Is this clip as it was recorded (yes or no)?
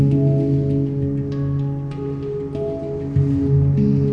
yes